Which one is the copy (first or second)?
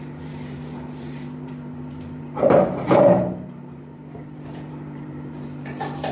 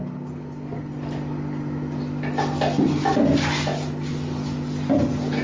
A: first